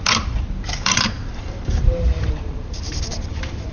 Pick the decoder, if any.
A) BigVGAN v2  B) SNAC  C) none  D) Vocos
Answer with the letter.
A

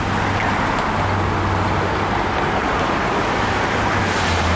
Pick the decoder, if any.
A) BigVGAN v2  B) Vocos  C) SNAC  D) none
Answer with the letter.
D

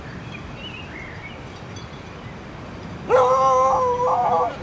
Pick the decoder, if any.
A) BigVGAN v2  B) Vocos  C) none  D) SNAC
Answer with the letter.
C